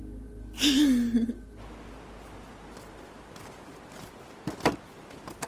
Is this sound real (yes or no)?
yes